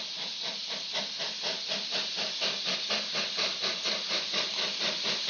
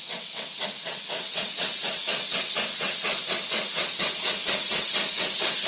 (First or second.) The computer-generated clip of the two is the second